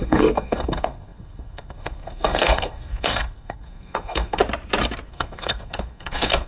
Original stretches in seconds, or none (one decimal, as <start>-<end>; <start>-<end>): 4.4-5.1